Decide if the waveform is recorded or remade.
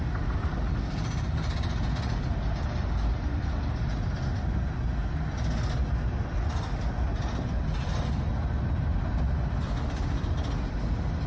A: recorded